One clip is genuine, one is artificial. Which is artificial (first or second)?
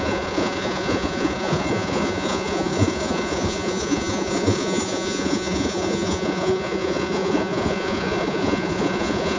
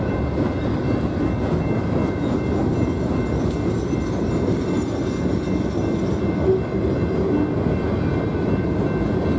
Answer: first